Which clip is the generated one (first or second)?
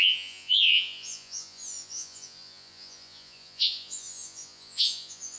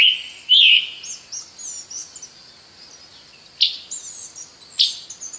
first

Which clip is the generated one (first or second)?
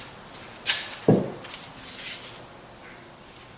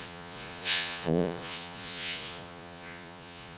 second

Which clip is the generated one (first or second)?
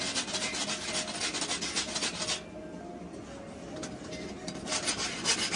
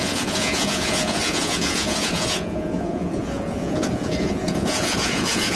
second